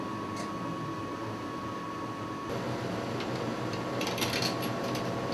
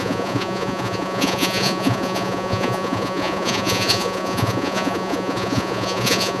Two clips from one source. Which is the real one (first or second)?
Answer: first